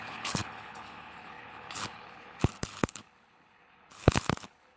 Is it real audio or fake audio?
fake